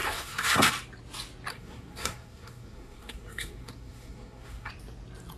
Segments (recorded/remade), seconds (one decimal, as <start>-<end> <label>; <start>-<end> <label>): 0.0-0.7 remade; 0.7-1.5 recorded; 1.5-4.7 remade; 4.7-5.4 recorded